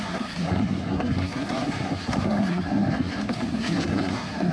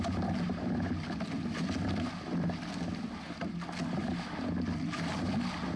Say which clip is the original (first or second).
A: second